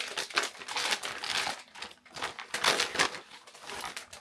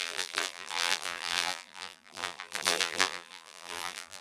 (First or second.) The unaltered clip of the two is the first